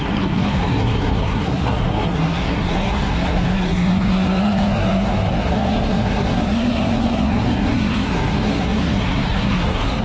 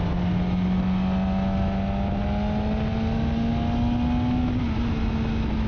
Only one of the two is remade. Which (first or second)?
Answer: first